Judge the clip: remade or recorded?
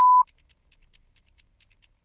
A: recorded